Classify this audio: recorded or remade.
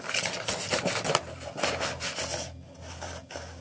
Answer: recorded